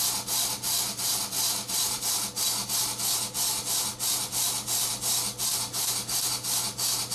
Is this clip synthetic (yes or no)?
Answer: no